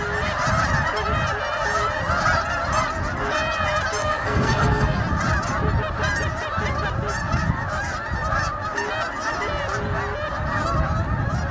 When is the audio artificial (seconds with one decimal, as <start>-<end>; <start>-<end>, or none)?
4.0-5.0